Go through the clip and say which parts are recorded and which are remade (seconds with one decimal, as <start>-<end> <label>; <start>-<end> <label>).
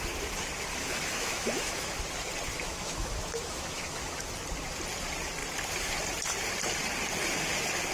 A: 0.0-0.7 recorded; 0.7-2.0 remade; 2.0-2.5 recorded; 2.5-4.3 remade; 4.3-7.9 recorded